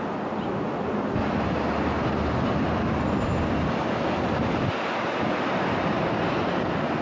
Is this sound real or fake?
real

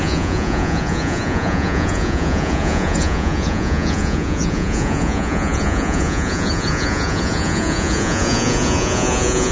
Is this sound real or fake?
fake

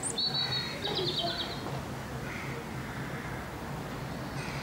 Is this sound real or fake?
real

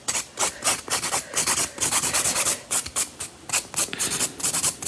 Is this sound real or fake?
real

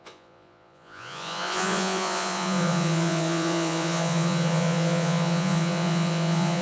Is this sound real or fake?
fake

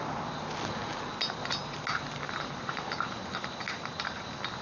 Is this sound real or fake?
real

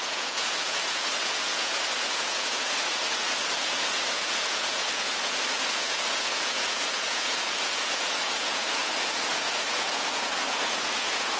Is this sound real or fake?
fake